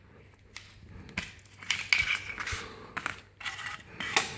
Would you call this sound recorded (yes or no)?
yes